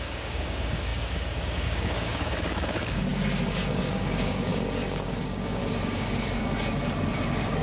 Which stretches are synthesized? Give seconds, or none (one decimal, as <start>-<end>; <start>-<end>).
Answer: 0.0-6.4; 7.1-7.6